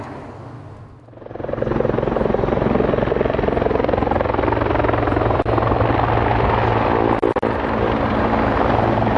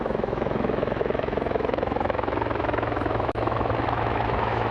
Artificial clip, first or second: second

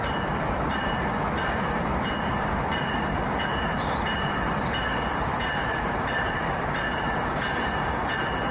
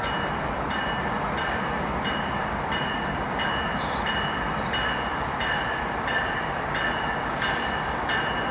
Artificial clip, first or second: first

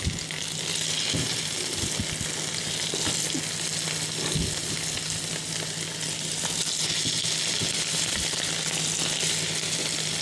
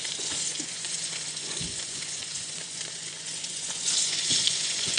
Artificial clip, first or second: second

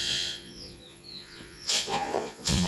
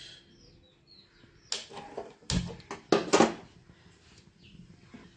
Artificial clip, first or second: first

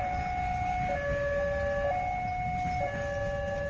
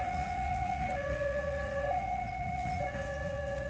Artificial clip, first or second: second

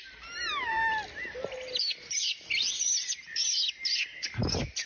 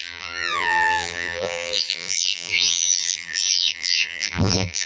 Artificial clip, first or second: second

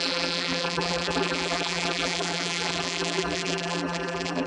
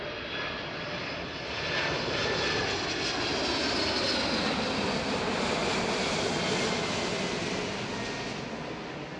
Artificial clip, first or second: first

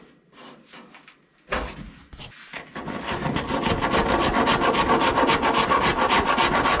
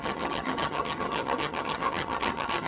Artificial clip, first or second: second